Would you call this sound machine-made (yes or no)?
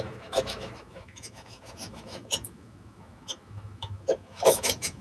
yes